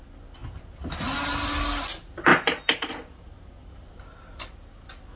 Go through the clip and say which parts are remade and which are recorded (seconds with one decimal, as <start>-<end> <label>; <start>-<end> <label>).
0.0-5.2 recorded